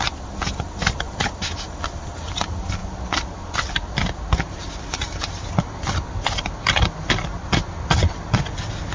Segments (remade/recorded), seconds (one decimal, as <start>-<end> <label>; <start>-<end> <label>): 0.0-8.9 recorded